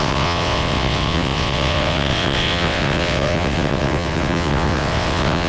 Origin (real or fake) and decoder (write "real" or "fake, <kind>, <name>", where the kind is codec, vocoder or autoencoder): fake, vocoder, WaveNeXt